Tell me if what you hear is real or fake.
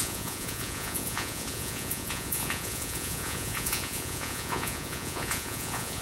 fake